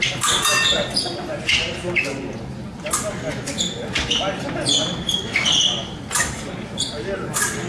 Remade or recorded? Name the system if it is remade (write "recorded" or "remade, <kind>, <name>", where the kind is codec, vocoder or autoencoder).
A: recorded